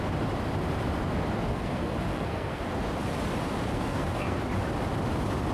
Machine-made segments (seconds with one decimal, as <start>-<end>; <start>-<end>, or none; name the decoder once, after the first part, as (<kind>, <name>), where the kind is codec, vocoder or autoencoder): 1.5-2.6 (codec, SNAC); 3.7-4.4